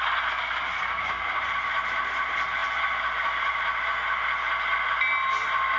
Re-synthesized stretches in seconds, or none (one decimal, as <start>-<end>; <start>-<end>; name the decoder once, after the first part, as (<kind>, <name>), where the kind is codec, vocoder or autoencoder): 0.8-1.4 (codec, DAC)